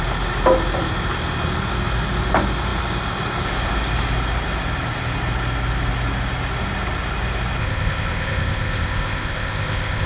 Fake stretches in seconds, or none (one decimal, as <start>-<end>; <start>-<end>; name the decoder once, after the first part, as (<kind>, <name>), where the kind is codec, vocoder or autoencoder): 7.6-10.1 (codec, ZipCodec)